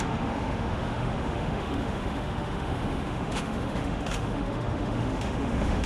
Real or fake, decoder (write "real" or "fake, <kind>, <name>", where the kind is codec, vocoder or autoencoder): fake, autoencoder, DAC-VAE